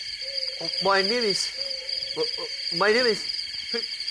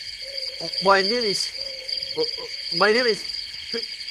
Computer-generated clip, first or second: second